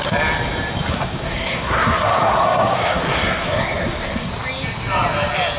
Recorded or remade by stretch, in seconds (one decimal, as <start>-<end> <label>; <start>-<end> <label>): 0.0-0.9 recorded; 0.9-4.3 remade; 4.3-5.6 recorded